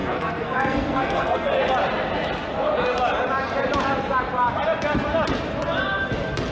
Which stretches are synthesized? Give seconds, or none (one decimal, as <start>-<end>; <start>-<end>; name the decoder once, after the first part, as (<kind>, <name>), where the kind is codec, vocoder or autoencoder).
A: 0.0-1.5 (codec, SNAC)